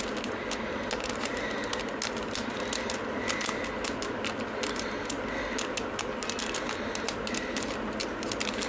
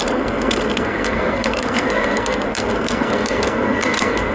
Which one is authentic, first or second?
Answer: first